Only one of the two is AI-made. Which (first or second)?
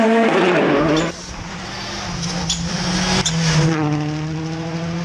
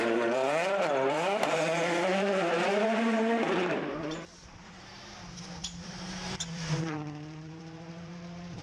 second